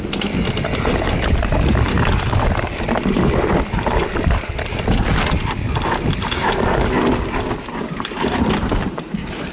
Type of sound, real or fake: real